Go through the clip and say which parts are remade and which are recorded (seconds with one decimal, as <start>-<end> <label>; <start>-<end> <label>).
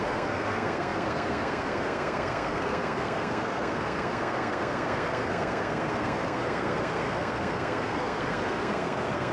0.0-9.3 remade